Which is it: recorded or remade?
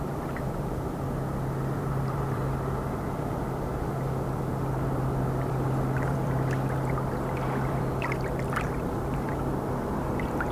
remade